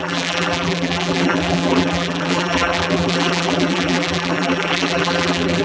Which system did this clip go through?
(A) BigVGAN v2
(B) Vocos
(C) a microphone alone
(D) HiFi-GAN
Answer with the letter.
A